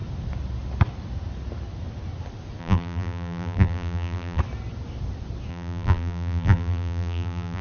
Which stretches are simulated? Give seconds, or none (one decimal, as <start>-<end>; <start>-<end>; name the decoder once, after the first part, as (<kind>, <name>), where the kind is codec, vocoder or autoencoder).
2.6-4.4 (vocoder, BigVGAN v2); 5.5-7.6